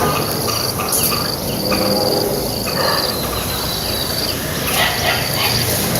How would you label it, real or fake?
real